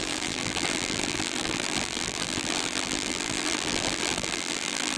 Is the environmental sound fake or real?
fake